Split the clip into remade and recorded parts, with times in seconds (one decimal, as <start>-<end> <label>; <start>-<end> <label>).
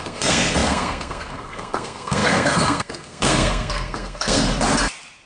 0.0-4.5 remade; 4.5-5.3 recorded